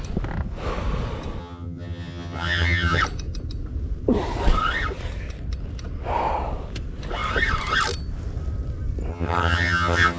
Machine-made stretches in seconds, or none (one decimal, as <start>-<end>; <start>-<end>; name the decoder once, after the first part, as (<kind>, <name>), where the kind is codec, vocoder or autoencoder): 1.4-3.0 (vocoder, HiFi-GAN); 9.1-10.2